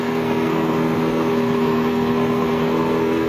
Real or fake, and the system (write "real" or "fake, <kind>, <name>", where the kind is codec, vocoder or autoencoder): fake, codec, SNAC